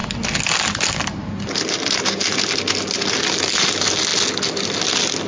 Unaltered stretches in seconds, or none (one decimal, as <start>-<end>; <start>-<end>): 0.0-5.3